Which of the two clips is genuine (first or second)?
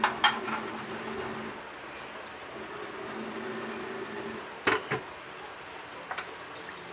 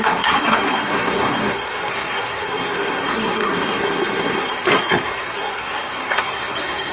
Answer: first